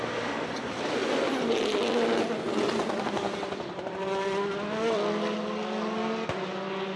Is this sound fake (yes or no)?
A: no